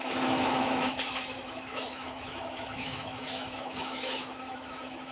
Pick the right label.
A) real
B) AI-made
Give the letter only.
B